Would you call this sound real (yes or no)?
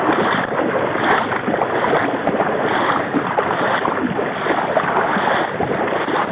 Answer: yes